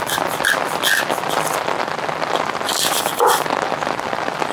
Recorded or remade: recorded